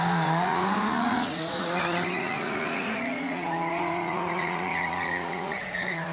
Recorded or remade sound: remade